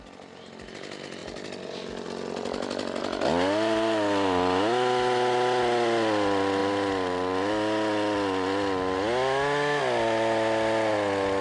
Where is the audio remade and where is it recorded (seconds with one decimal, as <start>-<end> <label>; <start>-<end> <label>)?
0.0-11.4 recorded